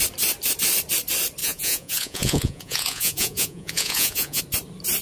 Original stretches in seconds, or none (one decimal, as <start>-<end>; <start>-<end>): 0.0-1.4; 4.4-5.0